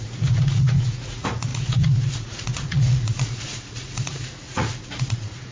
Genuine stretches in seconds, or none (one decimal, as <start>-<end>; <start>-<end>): none